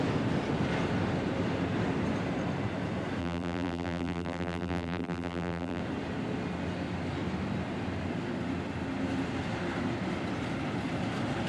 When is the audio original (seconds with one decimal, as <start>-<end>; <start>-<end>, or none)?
0.0-3.2; 5.8-11.5